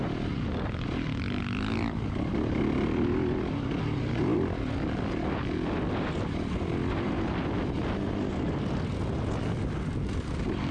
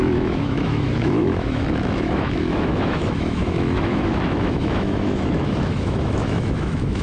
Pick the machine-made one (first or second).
second